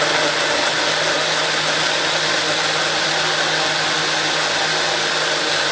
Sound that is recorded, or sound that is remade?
recorded